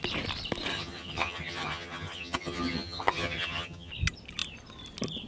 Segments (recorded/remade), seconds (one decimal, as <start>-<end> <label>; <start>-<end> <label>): 0.0-0.7 recorded; 0.7-3.9 remade; 3.9-5.3 recorded